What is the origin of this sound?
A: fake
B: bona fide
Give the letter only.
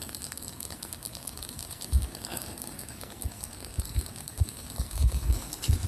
A